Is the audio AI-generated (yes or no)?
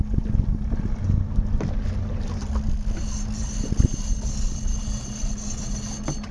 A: no